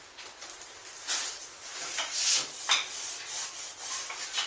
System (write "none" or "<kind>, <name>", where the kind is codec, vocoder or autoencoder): none